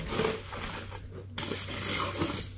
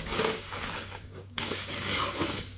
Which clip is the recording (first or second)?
first